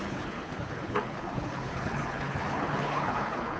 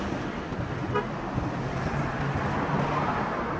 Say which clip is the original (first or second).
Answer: second